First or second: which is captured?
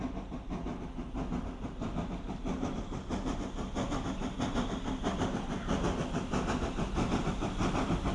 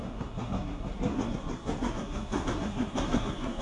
first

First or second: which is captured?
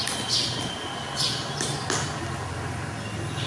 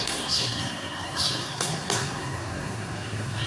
first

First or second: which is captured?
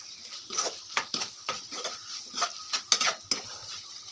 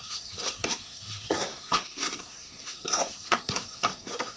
first